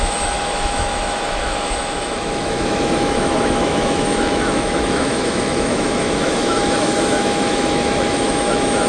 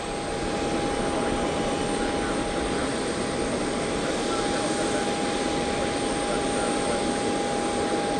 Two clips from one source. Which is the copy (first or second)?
first